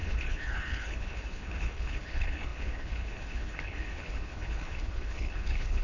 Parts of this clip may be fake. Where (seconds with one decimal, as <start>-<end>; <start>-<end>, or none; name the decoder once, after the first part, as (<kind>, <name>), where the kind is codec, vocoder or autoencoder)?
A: 0.0-5.8 (codec, HILCodec)